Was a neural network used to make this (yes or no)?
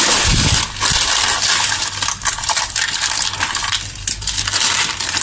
yes